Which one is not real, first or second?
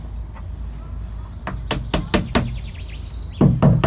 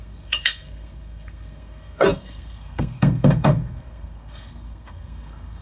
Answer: second